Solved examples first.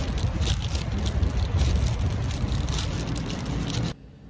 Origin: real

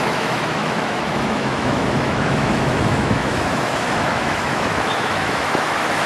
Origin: fake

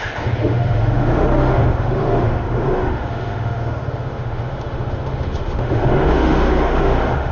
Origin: fake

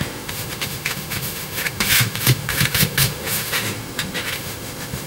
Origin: fake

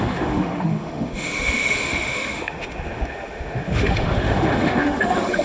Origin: fake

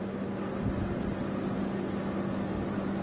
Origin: real